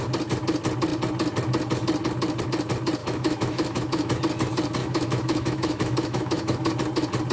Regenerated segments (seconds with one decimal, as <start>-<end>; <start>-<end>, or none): 3.0-4.2; 4.8-6.7